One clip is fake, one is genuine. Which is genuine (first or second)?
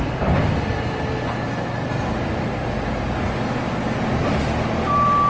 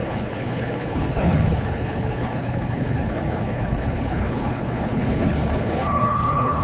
first